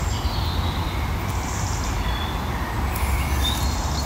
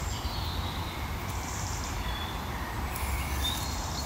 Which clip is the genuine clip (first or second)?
first